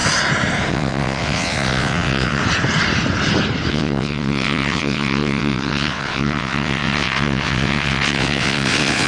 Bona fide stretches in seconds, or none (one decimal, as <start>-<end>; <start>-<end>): 0.0-0.7; 2.4-3.7